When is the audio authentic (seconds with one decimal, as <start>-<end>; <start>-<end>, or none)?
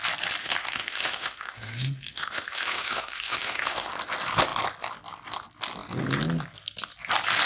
0.0-0.4; 3.9-7.5